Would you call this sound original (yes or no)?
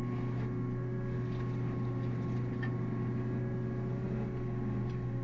yes